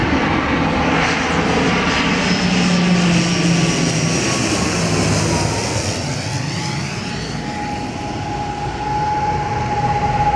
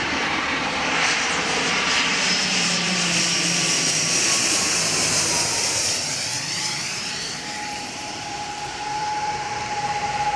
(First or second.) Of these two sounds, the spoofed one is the second